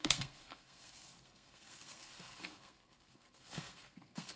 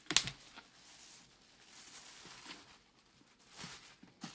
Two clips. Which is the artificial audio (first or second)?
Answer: first